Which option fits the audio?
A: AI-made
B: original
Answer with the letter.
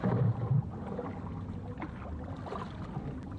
B